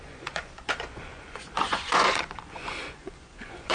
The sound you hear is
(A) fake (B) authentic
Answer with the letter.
A